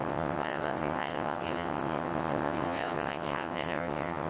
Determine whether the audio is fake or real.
fake